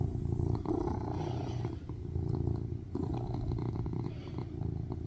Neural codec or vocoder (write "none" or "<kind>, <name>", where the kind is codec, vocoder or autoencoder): none